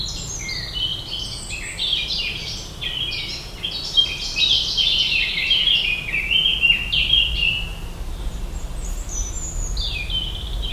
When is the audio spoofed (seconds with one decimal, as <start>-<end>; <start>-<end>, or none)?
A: 0.9-1.4